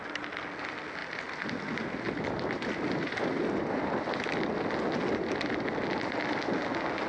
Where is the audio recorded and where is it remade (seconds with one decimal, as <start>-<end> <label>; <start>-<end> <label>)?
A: 0.0-1.0 recorded; 1.0-4.5 remade; 4.5-7.1 recorded